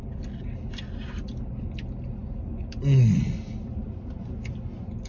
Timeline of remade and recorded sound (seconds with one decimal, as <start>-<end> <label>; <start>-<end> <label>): 0.0-5.1 recorded